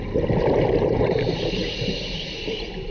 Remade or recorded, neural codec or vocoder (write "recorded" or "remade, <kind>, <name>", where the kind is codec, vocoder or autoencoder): recorded